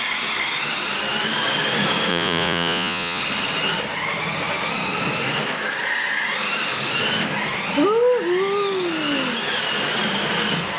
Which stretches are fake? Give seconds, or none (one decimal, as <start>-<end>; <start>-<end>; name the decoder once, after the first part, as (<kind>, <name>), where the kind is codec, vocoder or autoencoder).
2.1-3.2 (vocoder, Vocos)